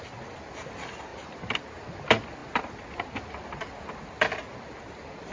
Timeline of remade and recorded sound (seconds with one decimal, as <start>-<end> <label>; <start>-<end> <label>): 0.0-1.1 recorded; 1.1-1.6 remade; 1.6-5.3 recorded